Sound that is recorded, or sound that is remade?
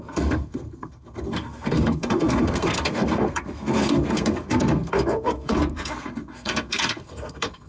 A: remade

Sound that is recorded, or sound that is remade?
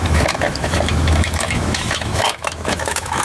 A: remade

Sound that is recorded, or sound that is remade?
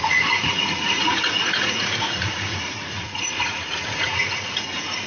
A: remade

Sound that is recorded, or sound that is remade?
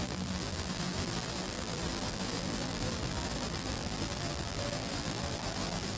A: remade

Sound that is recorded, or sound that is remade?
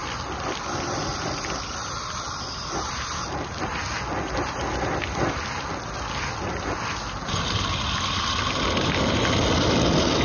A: recorded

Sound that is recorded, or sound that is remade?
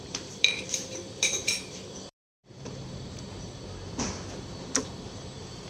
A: remade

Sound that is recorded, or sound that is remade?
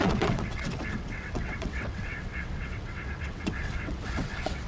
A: remade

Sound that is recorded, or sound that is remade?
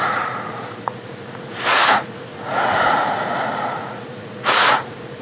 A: remade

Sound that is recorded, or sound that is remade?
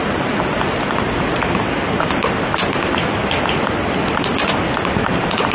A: recorded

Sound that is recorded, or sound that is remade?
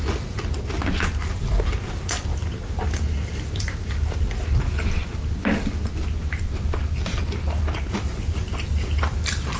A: recorded